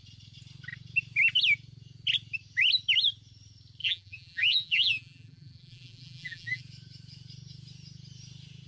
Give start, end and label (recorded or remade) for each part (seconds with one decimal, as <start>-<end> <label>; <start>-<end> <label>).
0.0-3.8 recorded; 3.8-6.6 remade; 6.6-8.7 recorded